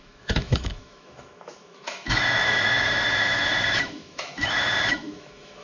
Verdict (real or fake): fake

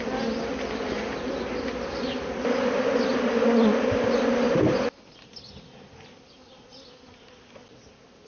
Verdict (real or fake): real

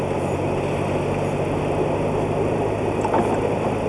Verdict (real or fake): real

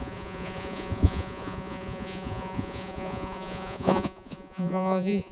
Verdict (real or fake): fake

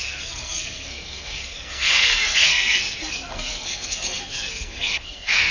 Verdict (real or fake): fake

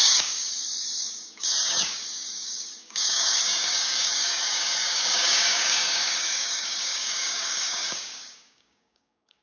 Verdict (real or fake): fake